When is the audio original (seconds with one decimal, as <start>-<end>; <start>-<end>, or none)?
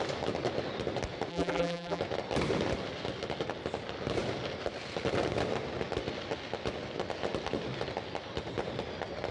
0.0-1.3; 2.0-9.3